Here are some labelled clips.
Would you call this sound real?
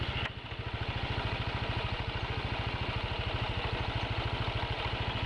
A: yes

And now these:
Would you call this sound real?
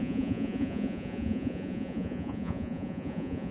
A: no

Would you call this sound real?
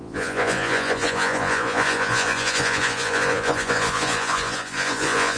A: no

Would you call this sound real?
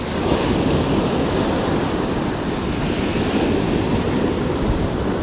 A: yes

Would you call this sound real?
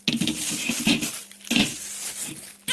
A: yes